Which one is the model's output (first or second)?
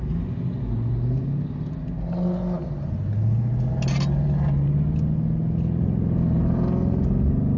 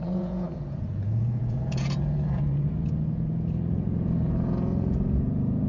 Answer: second